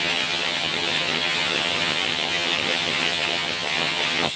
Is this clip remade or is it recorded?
remade